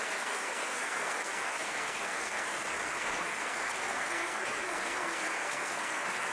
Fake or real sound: fake